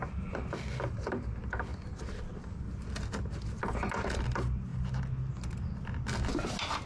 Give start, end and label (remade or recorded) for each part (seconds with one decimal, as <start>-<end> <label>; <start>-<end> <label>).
0.0-6.9 recorded